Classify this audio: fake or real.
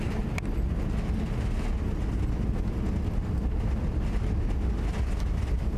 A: real